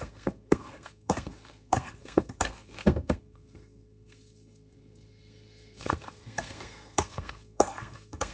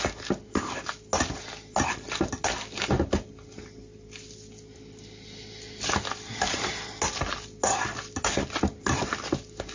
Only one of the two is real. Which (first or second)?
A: second